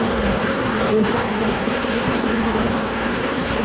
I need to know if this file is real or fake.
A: fake